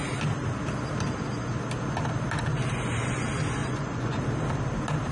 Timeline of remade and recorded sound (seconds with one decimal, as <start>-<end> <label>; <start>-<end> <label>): 0.0-3.6 recorded; 3.6-4.2 remade; 4.2-5.1 recorded